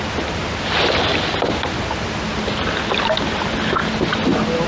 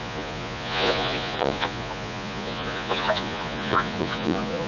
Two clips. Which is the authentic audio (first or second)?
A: first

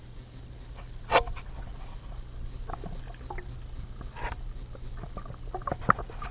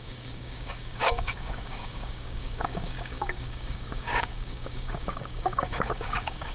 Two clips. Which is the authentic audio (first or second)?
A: first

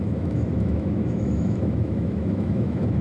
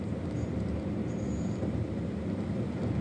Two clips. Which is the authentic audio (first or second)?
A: second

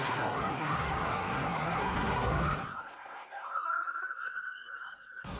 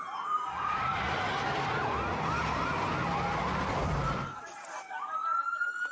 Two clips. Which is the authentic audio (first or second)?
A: second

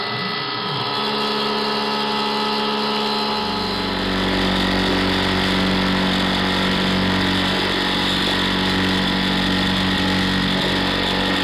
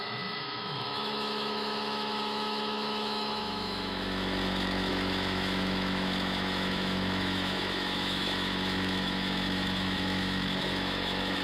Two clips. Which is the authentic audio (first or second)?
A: first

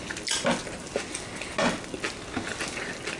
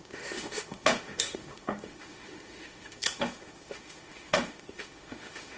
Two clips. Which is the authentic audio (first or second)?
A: first